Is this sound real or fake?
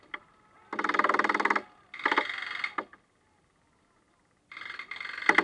real